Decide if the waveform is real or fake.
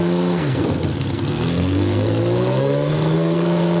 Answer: fake